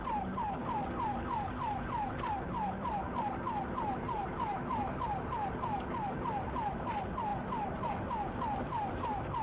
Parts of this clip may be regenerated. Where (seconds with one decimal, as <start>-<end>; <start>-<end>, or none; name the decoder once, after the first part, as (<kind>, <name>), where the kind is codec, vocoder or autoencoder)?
none